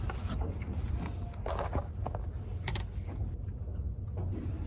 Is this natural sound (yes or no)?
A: yes